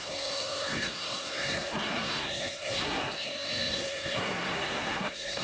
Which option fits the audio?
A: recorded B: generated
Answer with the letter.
B